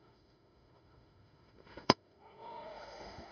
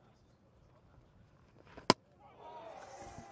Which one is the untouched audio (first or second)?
second